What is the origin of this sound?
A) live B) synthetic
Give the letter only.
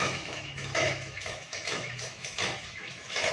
B